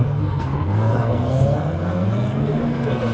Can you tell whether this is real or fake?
fake